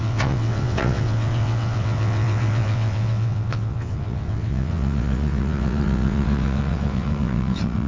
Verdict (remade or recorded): remade